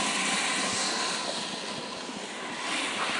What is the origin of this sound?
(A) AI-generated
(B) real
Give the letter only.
B